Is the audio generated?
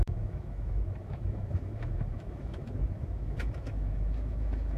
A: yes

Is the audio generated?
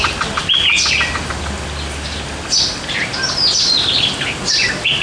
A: no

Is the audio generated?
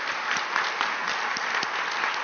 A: no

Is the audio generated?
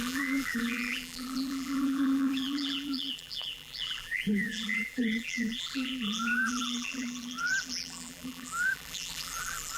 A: yes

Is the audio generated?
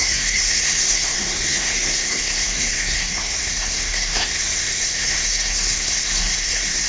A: yes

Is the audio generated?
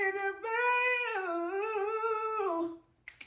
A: no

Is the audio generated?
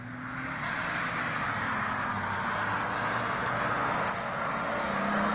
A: no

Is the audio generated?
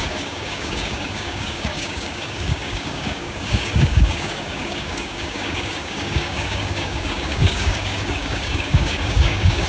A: yes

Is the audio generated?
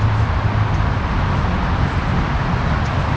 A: no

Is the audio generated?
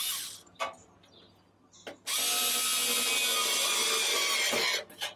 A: no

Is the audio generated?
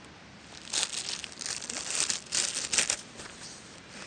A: no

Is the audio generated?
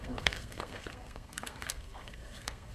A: yes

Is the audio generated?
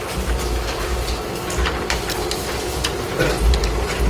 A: no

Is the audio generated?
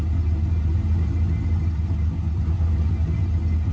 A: no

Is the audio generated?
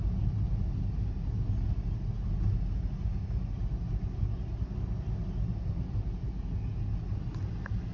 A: no